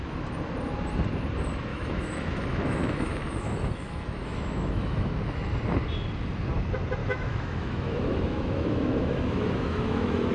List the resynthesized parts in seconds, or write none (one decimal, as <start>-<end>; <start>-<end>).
1.7-5.2; 7.0-10.3